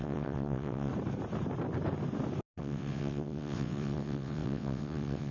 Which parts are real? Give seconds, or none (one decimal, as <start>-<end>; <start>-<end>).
0.9-2.6